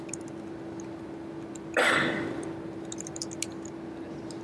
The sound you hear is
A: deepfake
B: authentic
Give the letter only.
B